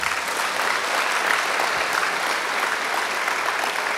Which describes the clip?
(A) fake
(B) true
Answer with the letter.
B